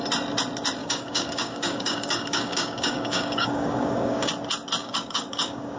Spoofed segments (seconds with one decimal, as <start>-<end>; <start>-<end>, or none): 0.8-4.3; 4.8-5.8